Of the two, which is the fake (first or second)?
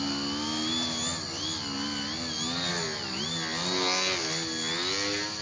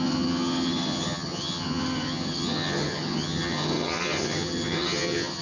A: second